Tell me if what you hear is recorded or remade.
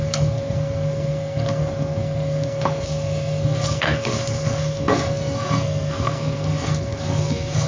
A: remade